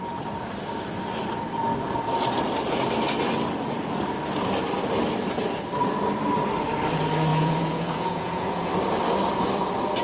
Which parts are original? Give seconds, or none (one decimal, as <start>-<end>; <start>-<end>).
0.0-7.3; 8.7-10.0